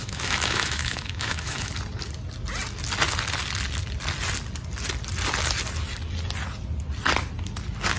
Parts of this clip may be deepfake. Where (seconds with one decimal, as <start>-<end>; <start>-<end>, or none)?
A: 0.0-1.7